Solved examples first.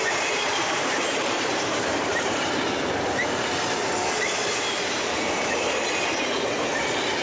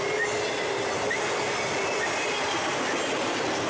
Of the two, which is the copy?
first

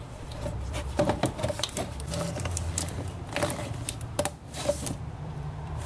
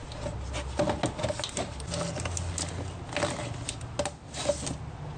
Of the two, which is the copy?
first